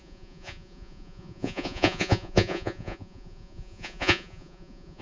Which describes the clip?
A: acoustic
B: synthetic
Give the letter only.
B